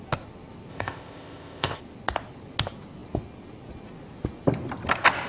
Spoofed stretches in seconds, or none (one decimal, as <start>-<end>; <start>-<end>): 0.7-1.8